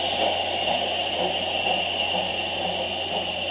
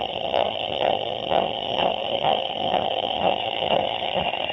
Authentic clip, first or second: first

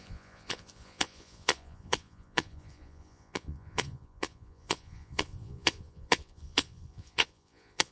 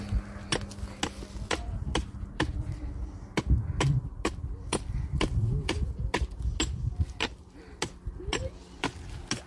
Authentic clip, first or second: second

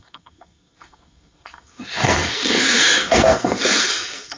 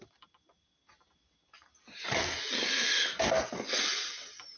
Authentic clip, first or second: second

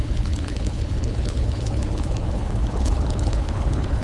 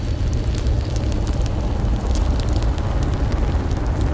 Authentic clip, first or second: second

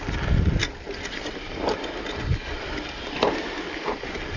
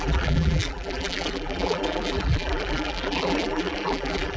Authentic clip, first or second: first